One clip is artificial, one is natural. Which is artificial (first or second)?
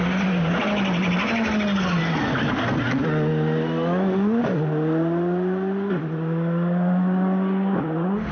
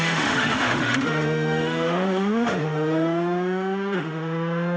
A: second